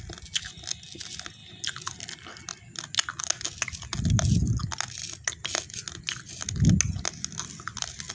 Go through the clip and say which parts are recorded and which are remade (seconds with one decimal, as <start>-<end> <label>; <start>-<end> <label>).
0.0-8.1 recorded